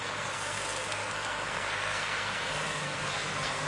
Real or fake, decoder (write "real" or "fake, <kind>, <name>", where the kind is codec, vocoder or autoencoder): fake, codec, SNAC